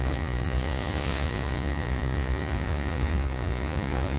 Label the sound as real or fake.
fake